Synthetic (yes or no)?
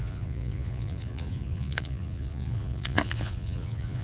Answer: yes